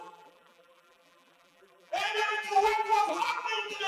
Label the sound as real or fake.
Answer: fake